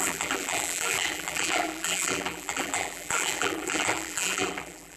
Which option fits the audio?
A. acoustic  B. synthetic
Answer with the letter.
B